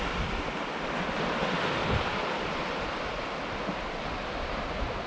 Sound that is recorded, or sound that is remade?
recorded